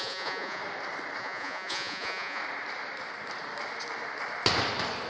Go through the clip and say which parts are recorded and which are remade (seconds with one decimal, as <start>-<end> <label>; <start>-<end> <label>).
0.0-0.6 remade; 0.6-1.2 recorded; 1.2-2.4 remade; 2.4-5.1 recorded